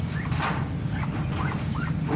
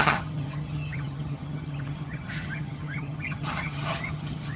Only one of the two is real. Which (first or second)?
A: first